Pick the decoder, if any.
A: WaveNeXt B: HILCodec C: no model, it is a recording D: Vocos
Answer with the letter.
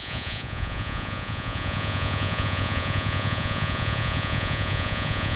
D